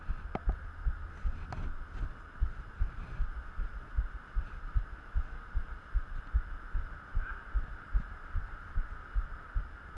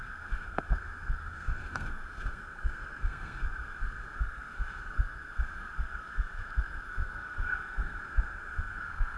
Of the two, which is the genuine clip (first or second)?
first